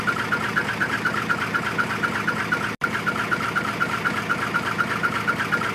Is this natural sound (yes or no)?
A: yes